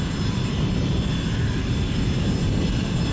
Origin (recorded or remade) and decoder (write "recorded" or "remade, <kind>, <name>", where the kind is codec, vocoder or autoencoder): recorded